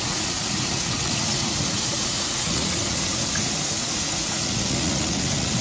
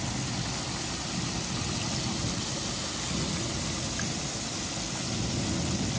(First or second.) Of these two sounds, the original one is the second